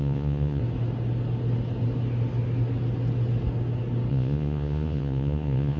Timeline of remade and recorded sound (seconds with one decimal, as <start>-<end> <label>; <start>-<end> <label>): 0.0-0.6 remade; 0.6-4.1 recorded; 4.1-5.8 remade

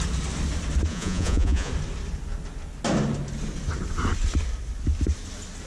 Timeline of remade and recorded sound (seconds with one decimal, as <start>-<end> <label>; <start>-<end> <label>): 0.0-0.9 recorded; 0.9-1.7 remade; 1.7-5.7 recorded